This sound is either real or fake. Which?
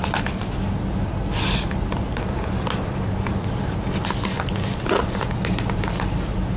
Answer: real